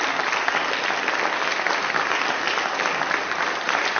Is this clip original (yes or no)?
yes